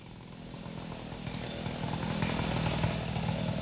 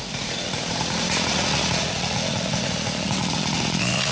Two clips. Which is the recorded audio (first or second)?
first